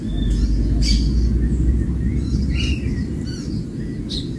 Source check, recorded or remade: recorded